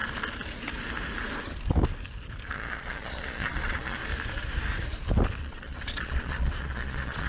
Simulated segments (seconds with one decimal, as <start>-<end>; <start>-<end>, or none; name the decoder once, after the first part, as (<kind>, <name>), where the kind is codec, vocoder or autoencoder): 2.5-4.0 (vocoder, Vocos); 5.4-7.3